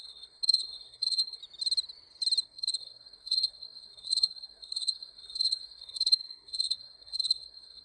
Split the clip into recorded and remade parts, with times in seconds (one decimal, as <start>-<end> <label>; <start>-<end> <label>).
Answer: 0.0-1.4 remade; 1.4-2.4 recorded; 2.4-7.8 remade